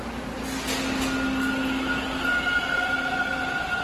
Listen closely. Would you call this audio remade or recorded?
recorded